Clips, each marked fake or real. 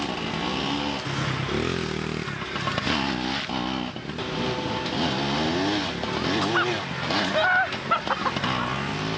real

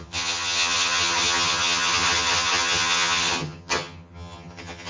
fake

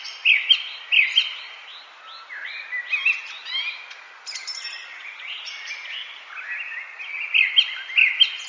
real